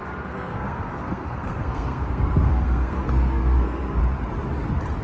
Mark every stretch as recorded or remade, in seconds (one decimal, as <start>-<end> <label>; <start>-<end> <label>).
0.0-4.0 remade; 4.0-5.0 recorded